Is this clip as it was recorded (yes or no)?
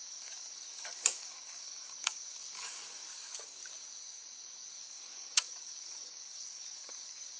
no